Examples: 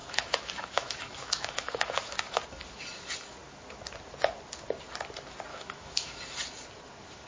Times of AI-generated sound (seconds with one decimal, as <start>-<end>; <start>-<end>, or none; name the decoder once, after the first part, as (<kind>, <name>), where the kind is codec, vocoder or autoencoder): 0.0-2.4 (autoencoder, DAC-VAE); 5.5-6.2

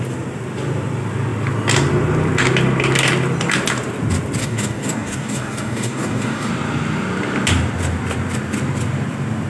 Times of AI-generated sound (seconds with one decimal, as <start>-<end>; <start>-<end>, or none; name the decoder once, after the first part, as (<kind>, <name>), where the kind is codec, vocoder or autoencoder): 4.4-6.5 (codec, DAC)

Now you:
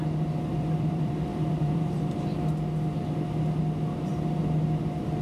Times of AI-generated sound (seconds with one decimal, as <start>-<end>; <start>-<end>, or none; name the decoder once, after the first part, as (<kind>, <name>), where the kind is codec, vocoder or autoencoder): 0.5-2.1 (vocoder, BigVGAN v2)